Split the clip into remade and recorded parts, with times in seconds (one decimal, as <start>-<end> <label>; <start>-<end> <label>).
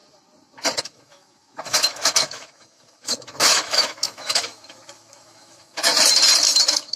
0.0-0.8 recorded; 0.8-5.9 remade; 5.9-6.6 recorded; 6.6-7.0 remade